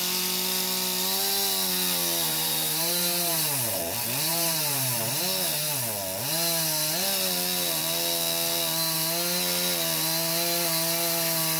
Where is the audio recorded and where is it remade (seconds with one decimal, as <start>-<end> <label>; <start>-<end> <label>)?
0.0-2.3 recorded; 2.3-3.8 remade; 3.8-4.3 recorded; 4.3-5.2 remade; 5.2-11.6 recorded